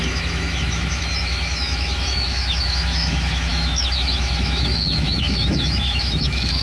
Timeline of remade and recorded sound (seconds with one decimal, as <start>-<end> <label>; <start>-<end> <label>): 0.0-6.6 remade